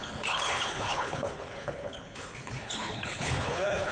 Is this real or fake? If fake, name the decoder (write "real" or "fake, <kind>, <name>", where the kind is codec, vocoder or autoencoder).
fake, codec, HILCodec